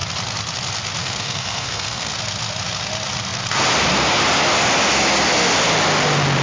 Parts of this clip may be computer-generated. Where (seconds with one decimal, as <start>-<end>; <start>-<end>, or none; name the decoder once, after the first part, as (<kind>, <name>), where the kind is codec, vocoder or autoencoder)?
1.0-2.1 (codec, SNAC)